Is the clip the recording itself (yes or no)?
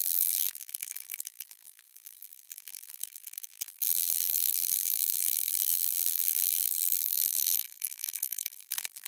no